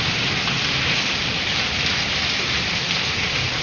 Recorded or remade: recorded